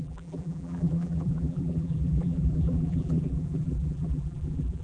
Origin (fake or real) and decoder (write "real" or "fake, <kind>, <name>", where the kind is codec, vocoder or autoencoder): fake, vocoder, BigVGAN v2